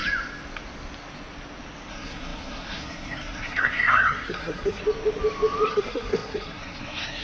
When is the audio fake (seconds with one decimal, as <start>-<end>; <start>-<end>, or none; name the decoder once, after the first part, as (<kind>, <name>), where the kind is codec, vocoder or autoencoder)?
1.9-4.8 (codec, SNAC); 5.7-7.2